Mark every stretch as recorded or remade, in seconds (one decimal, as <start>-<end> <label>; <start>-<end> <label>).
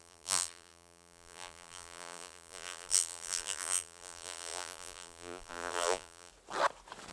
0.0-6.3 remade; 6.3-7.1 recorded